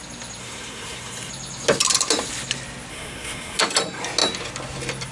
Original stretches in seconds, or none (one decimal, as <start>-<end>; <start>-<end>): 0.0-0.4; 1.3-2.9; 3.6-5.1